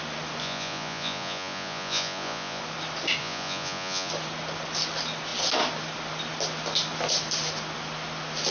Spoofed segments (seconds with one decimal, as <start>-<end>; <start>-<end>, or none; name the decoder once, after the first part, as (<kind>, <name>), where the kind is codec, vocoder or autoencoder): 0.4-2.6 (vocoder, Vocos); 3.2-4.1